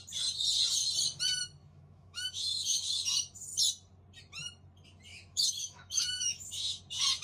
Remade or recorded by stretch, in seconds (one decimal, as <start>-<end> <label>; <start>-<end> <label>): 0.0-1.6 recorded; 1.6-2.9 remade; 2.9-5.1 recorded; 5.1-6.8 remade; 6.8-7.2 recorded